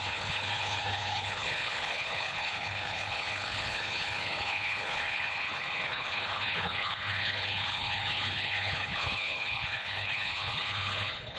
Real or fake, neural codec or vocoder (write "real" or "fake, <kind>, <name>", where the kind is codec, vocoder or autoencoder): fake, codec, HILCodec